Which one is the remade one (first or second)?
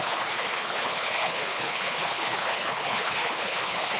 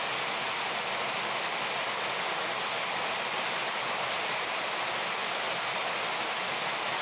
first